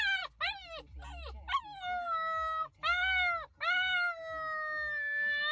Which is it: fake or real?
real